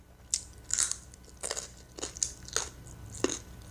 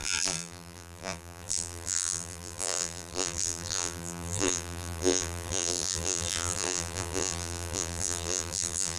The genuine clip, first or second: first